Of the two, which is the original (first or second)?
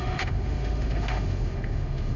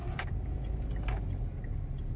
second